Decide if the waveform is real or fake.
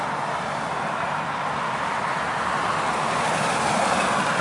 real